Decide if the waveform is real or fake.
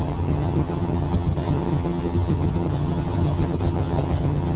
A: fake